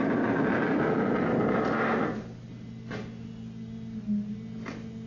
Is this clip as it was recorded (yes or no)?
yes